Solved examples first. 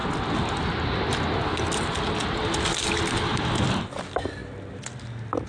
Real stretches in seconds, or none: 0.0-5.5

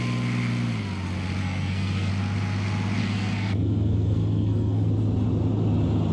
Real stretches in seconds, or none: 0.0-1.4; 2.1-3.0; 4.9-6.1

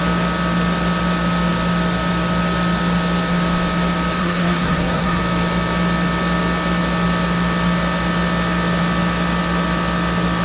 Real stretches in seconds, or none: 0.0-4.2; 5.2-10.4

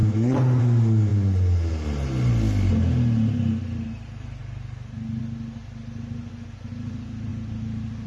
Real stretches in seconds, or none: 0.0-8.1

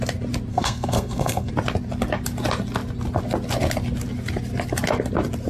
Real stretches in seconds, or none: 0.0-0.5; 1.5-5.5

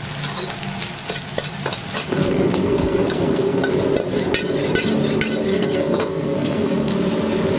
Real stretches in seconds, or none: 0.0-2.0; 3.7-5.5; 6.9-7.6

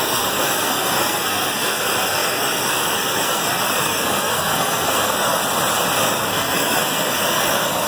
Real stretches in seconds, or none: 5.4-6.0